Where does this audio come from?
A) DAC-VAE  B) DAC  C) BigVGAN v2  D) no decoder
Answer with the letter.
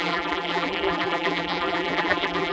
C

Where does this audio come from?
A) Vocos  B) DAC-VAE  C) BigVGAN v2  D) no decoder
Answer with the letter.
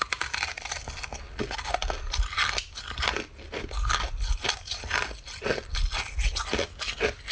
D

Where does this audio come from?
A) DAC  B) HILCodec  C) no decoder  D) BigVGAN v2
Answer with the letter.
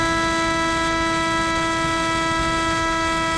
C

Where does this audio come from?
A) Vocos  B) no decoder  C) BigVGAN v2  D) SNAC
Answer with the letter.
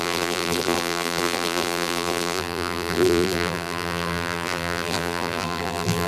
C